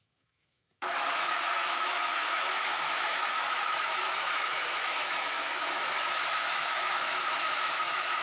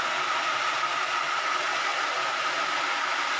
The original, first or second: second